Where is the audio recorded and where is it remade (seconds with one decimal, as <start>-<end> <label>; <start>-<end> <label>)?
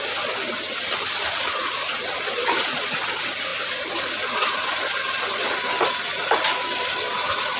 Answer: 0.0-1.9 recorded; 1.9-2.4 remade; 2.4-7.6 recorded